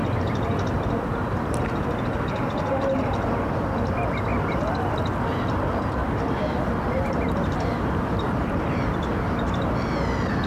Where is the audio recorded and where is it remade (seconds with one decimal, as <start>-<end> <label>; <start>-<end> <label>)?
0.0-0.9 remade; 0.9-4.3 recorded; 4.3-9.1 remade; 9.1-10.5 recorded